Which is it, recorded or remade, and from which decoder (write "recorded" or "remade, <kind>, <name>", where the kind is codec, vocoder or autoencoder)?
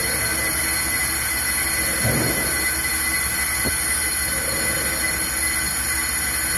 recorded